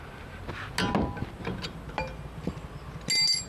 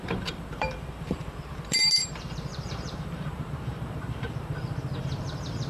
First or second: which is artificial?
second